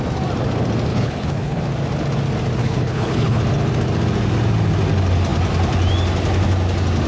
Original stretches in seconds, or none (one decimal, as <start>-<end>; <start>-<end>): 0.0-0.9; 1.6-2.6; 3.4-7.1